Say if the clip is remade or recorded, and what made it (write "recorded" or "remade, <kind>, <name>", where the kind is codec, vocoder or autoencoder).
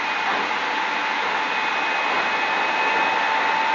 recorded